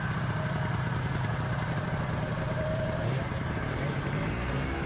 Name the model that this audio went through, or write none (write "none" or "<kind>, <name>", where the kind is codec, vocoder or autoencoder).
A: vocoder, BigVGAN v2